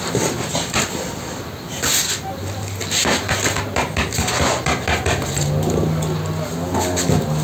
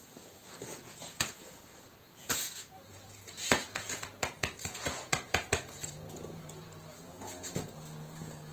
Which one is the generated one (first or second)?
second